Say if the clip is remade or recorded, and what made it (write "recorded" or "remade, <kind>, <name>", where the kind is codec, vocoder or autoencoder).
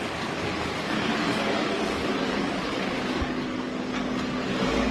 remade, codec, DAC